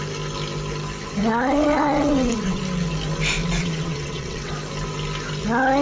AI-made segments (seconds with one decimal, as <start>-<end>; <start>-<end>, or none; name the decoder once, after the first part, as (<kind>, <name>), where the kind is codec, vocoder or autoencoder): 1.3-2.6 (vocoder, WaveNeXt); 3.6-4.5

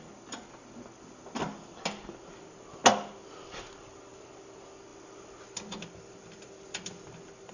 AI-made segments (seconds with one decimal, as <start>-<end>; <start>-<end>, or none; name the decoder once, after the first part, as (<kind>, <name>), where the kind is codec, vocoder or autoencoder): none